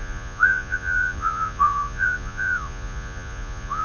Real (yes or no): no